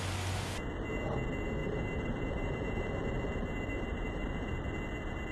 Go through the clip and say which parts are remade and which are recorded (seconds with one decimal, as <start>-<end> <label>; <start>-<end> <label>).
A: 0.0-1.6 recorded; 1.6-2.9 remade; 2.9-3.7 recorded; 3.7-4.5 remade; 4.5-5.3 recorded